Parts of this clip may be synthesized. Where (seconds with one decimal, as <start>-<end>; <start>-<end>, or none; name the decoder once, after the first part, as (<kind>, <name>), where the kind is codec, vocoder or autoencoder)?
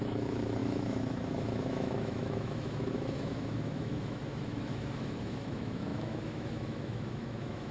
0.0-7.7 (autoencoder, DAC-VAE)